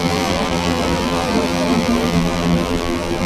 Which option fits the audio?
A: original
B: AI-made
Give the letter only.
B